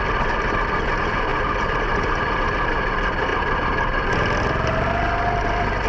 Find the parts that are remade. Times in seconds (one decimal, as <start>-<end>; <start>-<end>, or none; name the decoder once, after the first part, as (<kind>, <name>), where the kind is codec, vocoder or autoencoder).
none